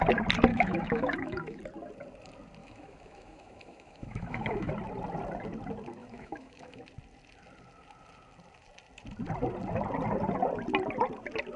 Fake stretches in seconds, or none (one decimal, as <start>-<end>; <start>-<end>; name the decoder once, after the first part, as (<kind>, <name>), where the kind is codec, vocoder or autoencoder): 0.5-1.6 (autoencoder, DAC-VAE); 2.6-4.7; 6.0-6.8